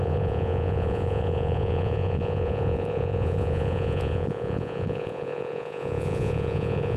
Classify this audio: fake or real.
fake